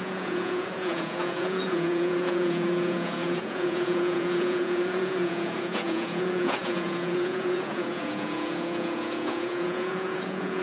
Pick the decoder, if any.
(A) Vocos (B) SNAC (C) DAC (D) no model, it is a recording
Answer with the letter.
A